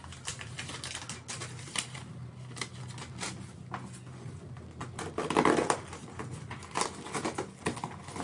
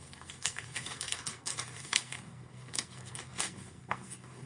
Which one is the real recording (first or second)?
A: first